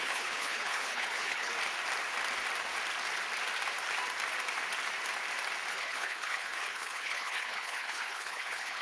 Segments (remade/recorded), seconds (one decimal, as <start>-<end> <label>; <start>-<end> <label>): 0.0-1.5 remade; 1.5-5.7 recorded; 5.7-8.8 remade